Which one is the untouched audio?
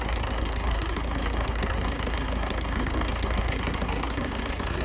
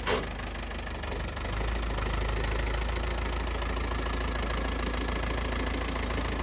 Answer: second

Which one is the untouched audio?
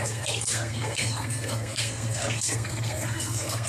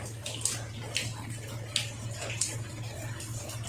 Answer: second